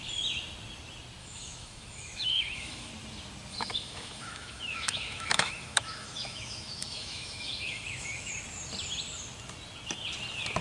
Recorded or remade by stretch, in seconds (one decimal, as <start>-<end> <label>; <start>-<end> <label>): 0.0-1.2 recorded; 1.2-2.9 remade; 2.9-3.5 recorded; 3.5-8.3 remade; 8.3-10.6 recorded